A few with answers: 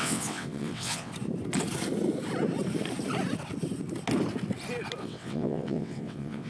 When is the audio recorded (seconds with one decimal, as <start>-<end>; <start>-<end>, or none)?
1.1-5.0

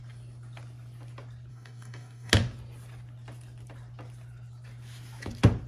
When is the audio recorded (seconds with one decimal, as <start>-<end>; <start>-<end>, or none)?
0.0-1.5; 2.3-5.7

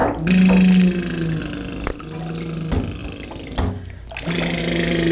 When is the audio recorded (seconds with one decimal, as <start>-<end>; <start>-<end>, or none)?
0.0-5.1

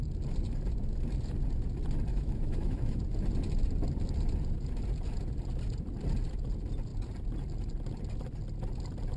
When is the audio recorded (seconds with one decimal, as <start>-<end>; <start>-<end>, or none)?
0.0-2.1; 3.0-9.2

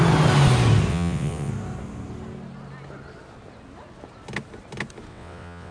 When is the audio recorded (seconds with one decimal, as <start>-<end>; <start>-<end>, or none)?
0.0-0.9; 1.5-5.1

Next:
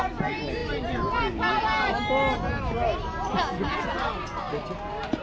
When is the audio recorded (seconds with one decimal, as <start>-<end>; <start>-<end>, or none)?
0.0-5.2